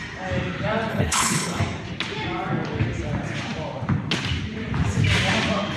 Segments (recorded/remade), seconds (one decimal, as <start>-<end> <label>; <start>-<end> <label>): 0.0-0.9 recorded; 0.9-1.6 remade; 1.6-5.8 recorded